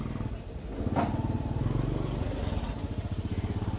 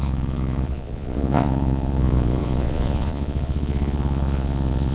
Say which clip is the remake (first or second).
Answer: second